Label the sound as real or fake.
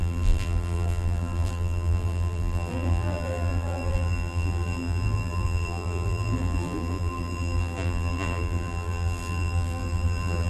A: fake